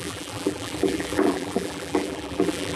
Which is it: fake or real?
fake